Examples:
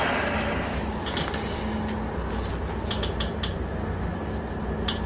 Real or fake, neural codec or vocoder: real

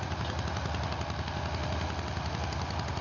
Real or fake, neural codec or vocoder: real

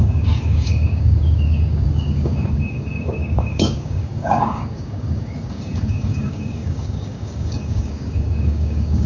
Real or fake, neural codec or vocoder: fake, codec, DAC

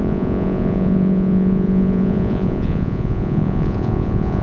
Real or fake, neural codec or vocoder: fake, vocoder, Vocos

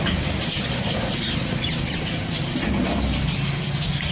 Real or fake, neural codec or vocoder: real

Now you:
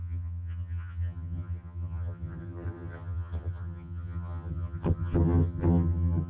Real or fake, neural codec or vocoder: fake, vocoder, HiFi-GAN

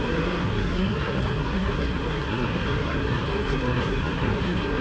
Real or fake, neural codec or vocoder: fake, codec, SNAC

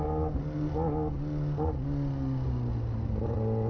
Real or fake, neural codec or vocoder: real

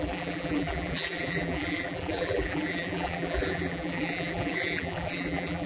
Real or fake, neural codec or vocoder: fake, vocoder, BigVGAN v2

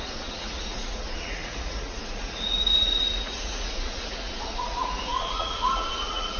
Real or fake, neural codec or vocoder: fake, vocoder, Vocos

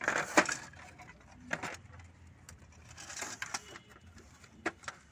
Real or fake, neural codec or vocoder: real